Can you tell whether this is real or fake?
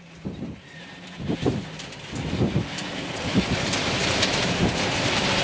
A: fake